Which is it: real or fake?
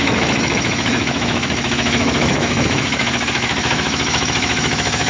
fake